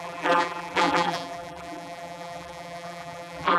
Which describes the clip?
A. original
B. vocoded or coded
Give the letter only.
B